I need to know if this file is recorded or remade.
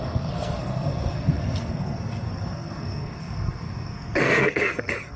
remade